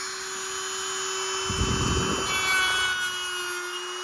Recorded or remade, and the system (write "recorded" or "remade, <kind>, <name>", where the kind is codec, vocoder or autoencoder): recorded